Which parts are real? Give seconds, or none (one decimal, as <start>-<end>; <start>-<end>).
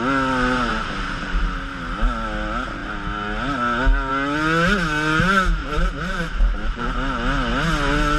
0.0-0.7; 1.4-5.6; 6.9-8.2